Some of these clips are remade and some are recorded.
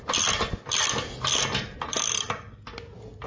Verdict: recorded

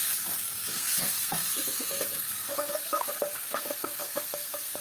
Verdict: remade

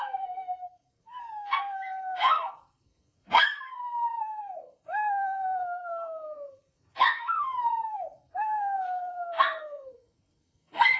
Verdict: remade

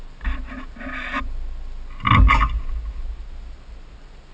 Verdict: recorded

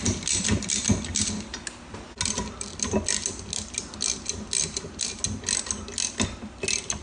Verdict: recorded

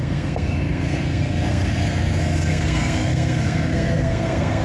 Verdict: remade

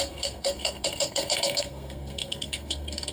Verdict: remade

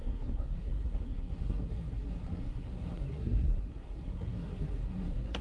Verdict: remade